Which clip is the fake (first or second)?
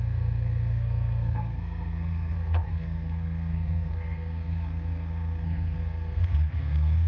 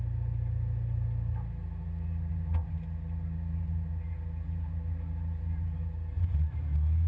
first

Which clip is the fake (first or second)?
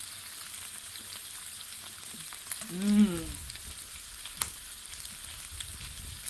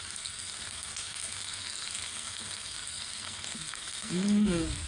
second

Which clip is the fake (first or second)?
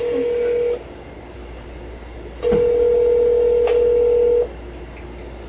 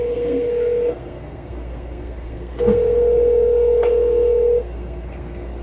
second